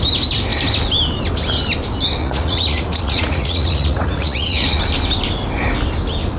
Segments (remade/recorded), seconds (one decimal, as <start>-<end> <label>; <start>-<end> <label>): 0.0-2.2 recorded; 2.2-4.8 remade; 4.8-6.4 recorded